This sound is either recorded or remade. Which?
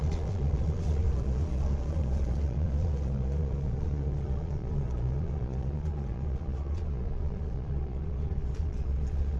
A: remade